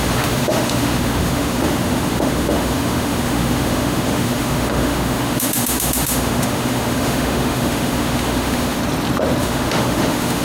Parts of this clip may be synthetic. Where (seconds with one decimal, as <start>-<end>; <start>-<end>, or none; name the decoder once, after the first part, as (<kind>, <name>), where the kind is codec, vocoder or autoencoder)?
0.0-8.8 (autoencoder, DAC-VAE); 9.4-10.4